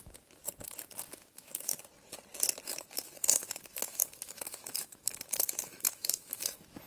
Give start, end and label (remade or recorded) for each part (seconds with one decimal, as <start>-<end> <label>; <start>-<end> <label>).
0.0-0.4 remade; 0.4-1.2 recorded; 1.2-1.7 remade; 1.7-2.7 recorded; 2.7-6.9 remade